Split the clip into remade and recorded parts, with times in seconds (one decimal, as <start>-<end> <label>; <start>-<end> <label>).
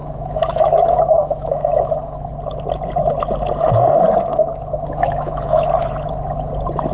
0.0-2.3 remade; 2.3-4.3 recorded; 4.3-5.7 remade; 5.7-6.9 recorded